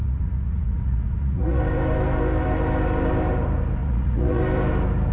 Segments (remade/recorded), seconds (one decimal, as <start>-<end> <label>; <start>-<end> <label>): 0.0-1.6 remade; 1.6-3.8 recorded; 3.8-4.4 remade; 4.4-5.1 recorded